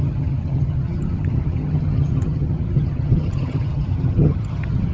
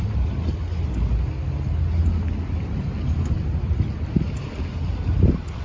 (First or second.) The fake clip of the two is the first